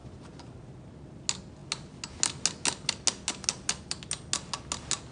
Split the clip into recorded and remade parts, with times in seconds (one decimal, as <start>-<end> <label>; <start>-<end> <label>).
0.0-0.7 remade; 0.7-5.1 recorded